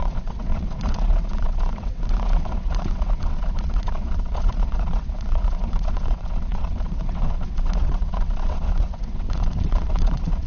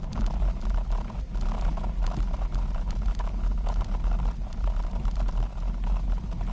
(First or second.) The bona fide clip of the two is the second